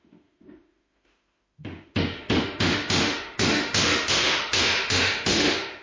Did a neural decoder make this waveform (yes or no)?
yes